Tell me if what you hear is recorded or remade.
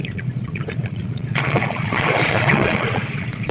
remade